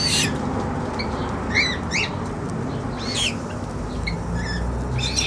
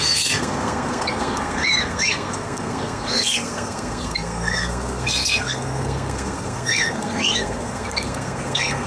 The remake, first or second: second